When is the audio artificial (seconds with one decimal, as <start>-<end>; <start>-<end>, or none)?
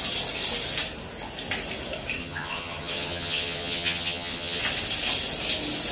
2.2-4.6